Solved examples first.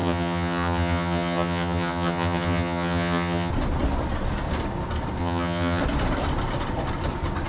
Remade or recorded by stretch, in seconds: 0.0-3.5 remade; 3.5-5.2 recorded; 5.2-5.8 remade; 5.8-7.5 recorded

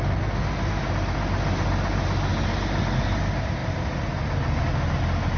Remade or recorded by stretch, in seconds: 0.0-5.4 recorded

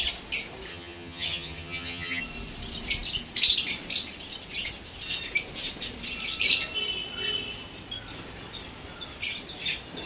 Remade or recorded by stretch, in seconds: 0.0-0.7 recorded; 0.7-2.2 remade; 2.2-10.1 recorded

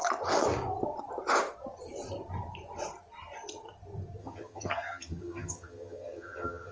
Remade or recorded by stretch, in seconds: 0.0-4.2 recorded; 4.2-6.7 remade

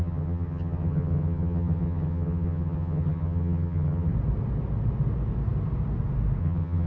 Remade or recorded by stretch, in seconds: 0.0-4.1 remade; 4.1-6.4 recorded; 6.4-6.9 remade